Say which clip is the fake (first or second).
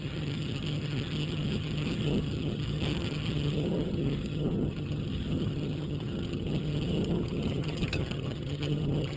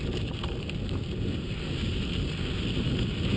first